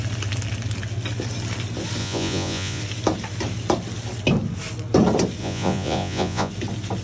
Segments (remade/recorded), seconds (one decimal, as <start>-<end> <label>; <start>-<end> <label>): 0.0-2.0 recorded; 2.0-2.8 remade; 2.8-5.4 recorded; 5.4-6.5 remade; 6.5-7.0 recorded